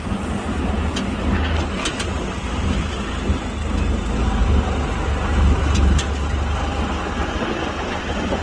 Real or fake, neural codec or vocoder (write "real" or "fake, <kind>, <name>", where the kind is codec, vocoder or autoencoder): real